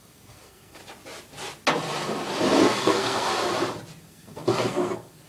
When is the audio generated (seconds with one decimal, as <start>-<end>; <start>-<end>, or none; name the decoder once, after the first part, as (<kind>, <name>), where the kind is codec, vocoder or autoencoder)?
0.0-0.8 (codec, SNAC); 2.6-3.3; 4.0-5.3